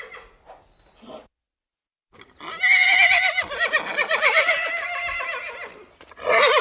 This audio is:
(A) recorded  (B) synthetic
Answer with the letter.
A